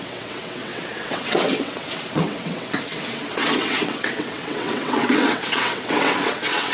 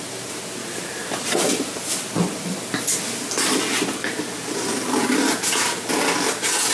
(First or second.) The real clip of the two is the second